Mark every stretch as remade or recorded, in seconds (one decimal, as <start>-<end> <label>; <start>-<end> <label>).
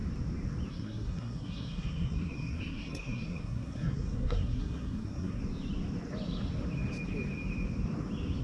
0.0-0.7 recorded; 0.7-5.4 remade; 5.4-8.4 recorded